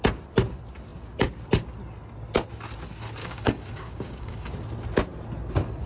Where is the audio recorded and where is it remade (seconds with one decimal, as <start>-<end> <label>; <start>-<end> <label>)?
0.0-3.2 recorded; 3.2-4.5 remade; 4.5-5.9 recorded